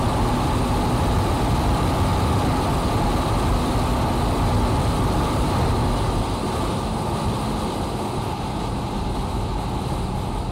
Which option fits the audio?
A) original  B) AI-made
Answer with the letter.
A